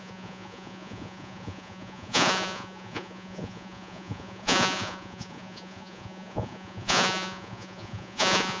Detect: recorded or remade remade